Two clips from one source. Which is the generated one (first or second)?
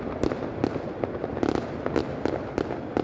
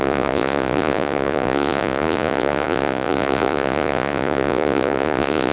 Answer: second